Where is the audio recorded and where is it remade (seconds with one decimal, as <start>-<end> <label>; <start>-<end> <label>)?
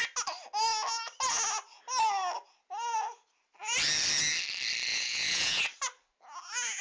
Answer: 0.0-4.9 recorded; 4.9-5.6 remade; 5.6-6.8 recorded